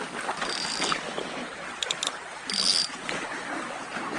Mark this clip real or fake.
real